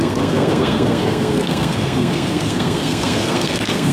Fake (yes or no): yes